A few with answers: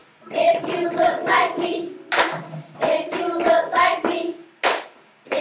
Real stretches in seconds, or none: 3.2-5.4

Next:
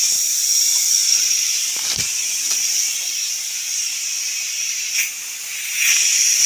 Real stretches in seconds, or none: 0.0-1.0; 4.9-6.5

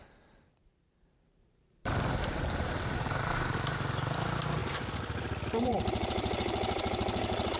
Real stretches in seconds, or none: 4.6-5.6

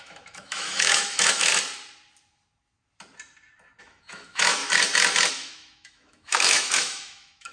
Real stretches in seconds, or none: 1.5-3.8; 4.6-5.3

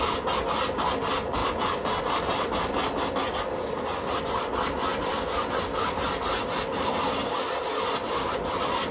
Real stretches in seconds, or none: 0.0-8.9